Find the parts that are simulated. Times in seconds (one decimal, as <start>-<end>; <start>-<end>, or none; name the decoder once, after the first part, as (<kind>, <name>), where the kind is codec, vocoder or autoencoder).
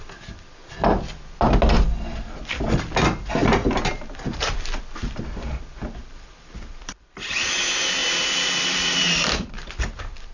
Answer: 3.4-4.8 (vocoder, BigVGAN v2); 6.0-7.5; 8.0-9.8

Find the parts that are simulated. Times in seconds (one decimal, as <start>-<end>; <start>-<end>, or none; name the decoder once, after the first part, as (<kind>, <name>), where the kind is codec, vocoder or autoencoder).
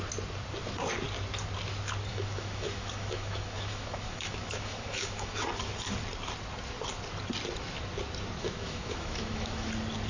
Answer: 2.1-5.3 (autoencoder, DAC-VAE); 8.4-9.7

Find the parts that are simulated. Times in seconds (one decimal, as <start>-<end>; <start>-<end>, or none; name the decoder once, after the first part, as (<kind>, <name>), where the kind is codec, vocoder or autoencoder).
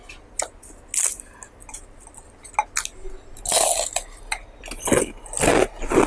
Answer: none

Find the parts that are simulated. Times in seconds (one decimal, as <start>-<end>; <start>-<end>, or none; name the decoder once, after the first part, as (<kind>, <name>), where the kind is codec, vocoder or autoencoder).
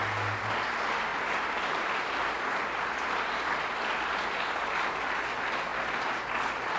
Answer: 1.1-4.9 (vocoder, BigVGAN v2)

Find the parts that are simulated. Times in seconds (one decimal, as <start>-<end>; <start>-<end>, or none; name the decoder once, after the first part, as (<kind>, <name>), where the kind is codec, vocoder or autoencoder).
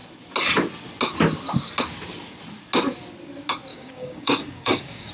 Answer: 3.7-5.1 (codec, DAC)